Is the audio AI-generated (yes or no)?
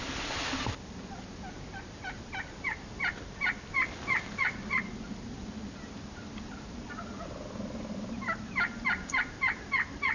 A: yes